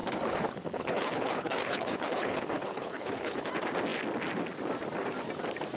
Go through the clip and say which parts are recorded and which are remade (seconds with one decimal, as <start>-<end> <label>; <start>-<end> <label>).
0.0-3.5 remade; 3.5-5.8 recorded